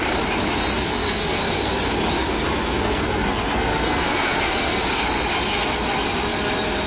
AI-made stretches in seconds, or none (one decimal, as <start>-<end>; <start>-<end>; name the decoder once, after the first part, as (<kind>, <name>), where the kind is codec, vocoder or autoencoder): 0.8-1.7 (codec, SNAC); 2.2-4.8